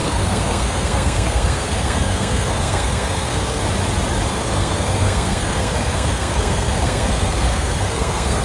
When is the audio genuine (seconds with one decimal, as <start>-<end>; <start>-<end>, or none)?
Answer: 3.6-4.3